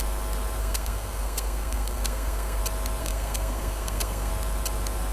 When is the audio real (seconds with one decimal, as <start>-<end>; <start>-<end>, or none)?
0.0-0.6; 2.6-3.0; 4.3-5.1